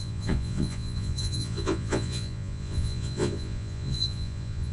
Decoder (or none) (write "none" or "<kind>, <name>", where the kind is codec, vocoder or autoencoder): vocoder, Vocos